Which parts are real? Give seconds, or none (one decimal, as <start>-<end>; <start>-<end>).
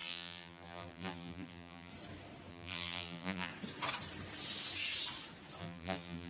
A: 1.9-2.5; 3.5-5.6